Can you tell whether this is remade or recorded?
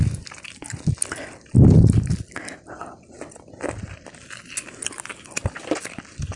recorded